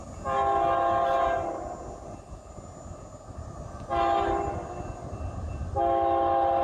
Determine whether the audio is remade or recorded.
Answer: recorded